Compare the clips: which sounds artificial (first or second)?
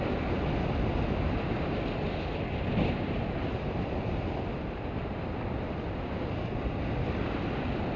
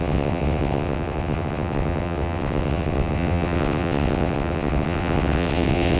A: second